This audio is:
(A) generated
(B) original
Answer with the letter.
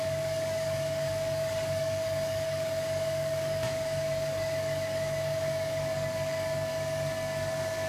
A